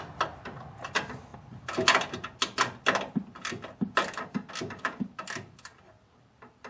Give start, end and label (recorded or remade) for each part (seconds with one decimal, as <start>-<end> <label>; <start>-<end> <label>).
0.0-6.7 recorded

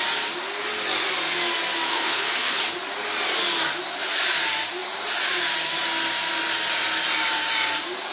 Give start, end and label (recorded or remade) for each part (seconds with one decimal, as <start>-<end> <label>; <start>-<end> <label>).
0.0-1.9 recorded; 1.9-2.6 remade; 2.6-8.1 recorded

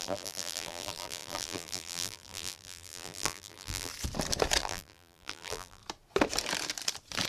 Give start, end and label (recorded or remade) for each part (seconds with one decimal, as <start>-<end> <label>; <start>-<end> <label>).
0.0-3.9 remade; 3.9-4.6 recorded; 4.6-5.8 remade; 5.8-7.3 recorded

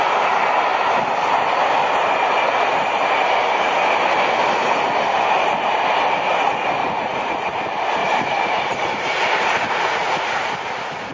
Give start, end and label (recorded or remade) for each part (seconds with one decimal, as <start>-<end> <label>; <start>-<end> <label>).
0.0-6.8 recorded; 6.8-7.6 remade; 7.6-8.0 recorded; 8.0-10.5 remade; 10.5-11.1 recorded

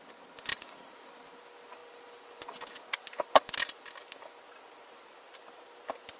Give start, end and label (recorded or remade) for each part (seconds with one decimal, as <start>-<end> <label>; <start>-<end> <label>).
0.0-0.5 recorded; 0.5-1.1 remade; 1.1-6.2 recorded

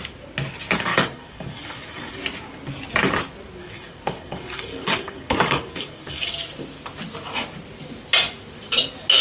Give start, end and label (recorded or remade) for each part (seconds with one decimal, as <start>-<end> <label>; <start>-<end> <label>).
0.0-0.9 recorded; 0.9-2.1 remade; 2.1-3.6 recorded; 3.6-6.3 remade; 6.3-9.2 recorded